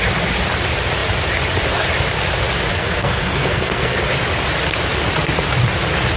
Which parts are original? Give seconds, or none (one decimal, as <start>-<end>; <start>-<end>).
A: 0.0-2.7; 4.1-6.2